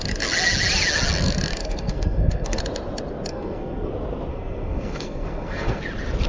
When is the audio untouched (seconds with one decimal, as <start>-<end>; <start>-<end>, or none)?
0.0-1.5; 2.6-3.3; 3.9-4.3; 5.8-6.3